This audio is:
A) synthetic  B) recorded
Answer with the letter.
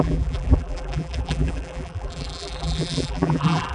A